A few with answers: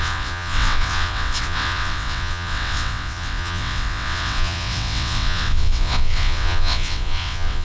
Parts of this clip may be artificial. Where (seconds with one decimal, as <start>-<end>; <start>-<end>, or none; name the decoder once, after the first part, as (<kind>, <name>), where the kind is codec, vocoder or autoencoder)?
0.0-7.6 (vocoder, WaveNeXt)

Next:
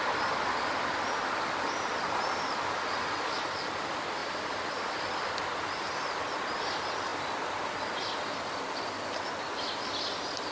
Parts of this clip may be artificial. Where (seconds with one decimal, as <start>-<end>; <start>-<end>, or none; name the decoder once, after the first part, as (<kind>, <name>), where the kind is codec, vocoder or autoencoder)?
none

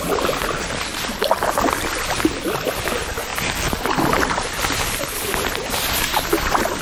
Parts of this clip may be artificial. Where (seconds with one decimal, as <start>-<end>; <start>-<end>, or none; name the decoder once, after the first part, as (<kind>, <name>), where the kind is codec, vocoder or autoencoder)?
none

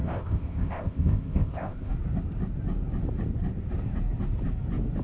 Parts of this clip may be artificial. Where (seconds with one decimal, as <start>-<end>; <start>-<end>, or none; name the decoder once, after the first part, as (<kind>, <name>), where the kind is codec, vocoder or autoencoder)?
0.0-1.9 (codec, ZipCodec)

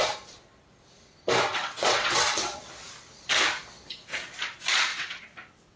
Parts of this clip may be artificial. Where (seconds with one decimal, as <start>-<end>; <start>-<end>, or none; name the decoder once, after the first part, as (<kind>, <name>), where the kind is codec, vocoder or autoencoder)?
1.5-2.6 (vocoder, WaveNeXt); 4.9-5.8

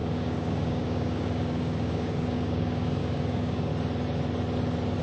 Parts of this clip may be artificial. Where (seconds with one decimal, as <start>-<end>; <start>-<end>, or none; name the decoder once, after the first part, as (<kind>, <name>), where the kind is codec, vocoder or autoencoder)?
0.0-3.7 (codec, DAC)

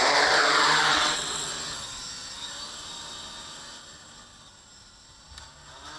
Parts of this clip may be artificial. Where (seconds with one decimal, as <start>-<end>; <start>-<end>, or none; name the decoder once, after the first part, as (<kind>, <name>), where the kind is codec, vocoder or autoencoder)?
0.9-1.5 (vocoder, WaveNeXt)